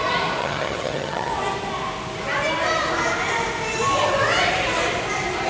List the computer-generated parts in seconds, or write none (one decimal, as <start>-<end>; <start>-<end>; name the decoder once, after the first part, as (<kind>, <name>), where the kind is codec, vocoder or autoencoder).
0.4-1.3 (vocoder, HiFi-GAN)